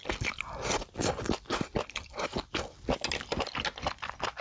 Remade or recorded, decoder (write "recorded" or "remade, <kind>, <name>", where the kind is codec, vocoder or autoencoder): recorded